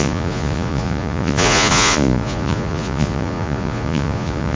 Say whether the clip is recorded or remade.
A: remade